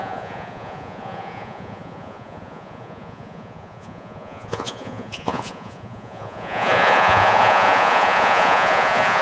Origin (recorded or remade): remade